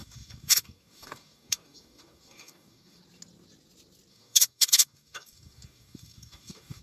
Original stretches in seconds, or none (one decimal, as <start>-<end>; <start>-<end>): 3.0-4.1